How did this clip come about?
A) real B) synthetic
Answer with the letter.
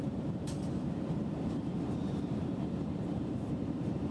B